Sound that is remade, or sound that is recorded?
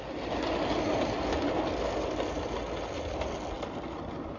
recorded